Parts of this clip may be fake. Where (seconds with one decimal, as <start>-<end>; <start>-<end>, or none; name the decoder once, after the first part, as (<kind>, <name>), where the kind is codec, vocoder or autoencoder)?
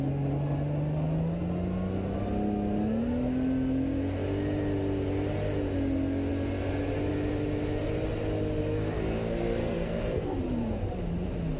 8.6-10.4 (codec, SNAC)